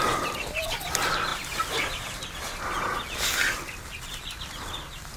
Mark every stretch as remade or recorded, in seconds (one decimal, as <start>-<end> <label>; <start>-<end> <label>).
0.0-5.2 recorded